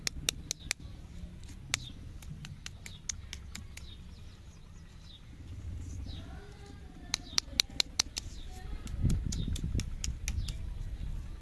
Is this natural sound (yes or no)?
yes